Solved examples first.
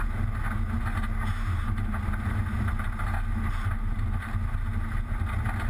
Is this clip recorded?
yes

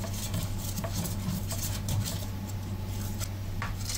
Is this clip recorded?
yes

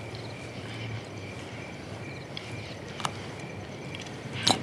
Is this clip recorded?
yes